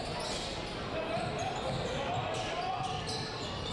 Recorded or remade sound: recorded